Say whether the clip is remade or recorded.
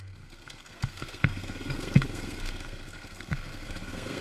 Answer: remade